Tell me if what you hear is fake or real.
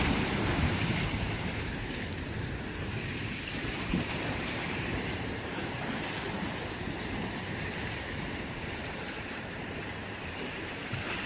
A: fake